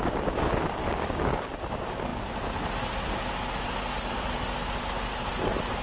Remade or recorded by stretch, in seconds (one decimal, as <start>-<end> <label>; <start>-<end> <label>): 0.0-0.8 recorded; 0.8-1.5 remade; 1.5-5.8 recorded